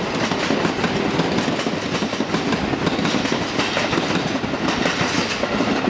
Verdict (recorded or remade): recorded